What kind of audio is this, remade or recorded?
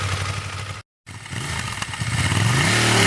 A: recorded